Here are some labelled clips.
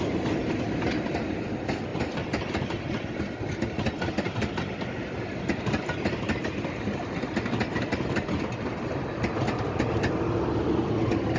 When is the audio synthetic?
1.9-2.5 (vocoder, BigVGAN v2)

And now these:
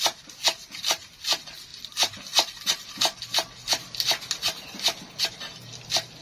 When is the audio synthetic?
1.7-5.4 (vocoder, BigVGAN v2)

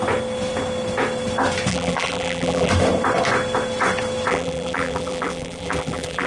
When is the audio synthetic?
1.7-2.7 (vocoder, BigVGAN v2); 4.3-6.3

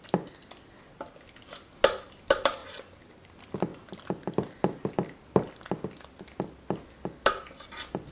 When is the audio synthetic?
2.6-3.3 (vocoder, BigVGAN v2)

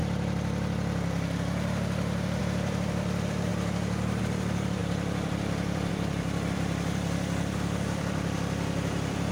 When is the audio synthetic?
2.4-3.5 (vocoder, BigVGAN v2); 4.2-9.3

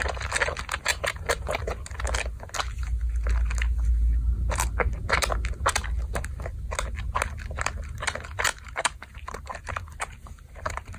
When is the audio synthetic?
0.9-1.6 (vocoder, BigVGAN v2); 8.5-11.0

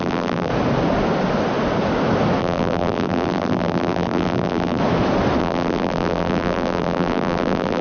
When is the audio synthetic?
0.0-0.5 (vocoder, BigVGAN v2); 2.4-4.8; 5.4-7.8

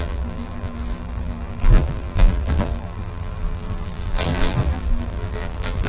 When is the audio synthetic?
0.0-5.9 (vocoder, BigVGAN v2)